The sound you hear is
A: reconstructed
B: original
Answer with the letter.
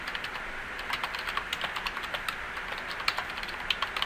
B